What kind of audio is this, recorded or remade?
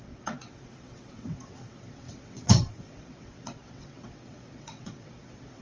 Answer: remade